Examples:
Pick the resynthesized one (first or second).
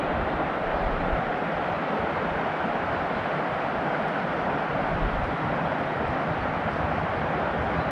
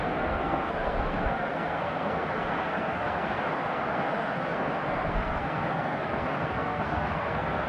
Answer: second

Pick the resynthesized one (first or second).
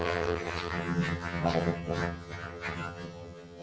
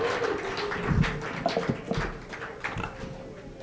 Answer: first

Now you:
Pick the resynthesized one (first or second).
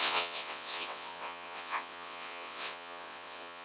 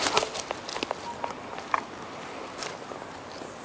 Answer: first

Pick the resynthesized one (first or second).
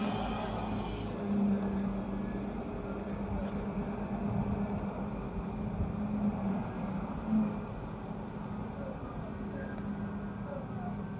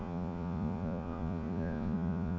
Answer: second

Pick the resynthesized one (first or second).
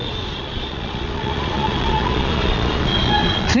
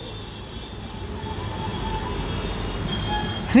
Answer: first